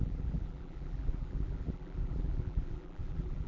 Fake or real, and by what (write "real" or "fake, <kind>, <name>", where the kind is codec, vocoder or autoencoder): fake, vocoder, BigVGAN v2